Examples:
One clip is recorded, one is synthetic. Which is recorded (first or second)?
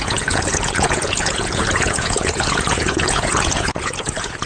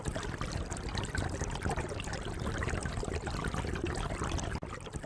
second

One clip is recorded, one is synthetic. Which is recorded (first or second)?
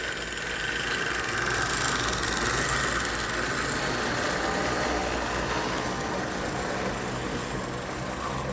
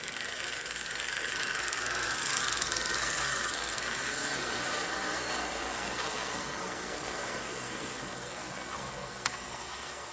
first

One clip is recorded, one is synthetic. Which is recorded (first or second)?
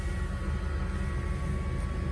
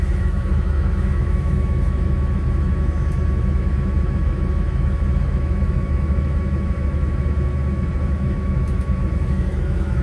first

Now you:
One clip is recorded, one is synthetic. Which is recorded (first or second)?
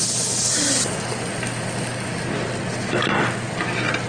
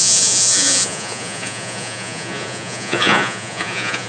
first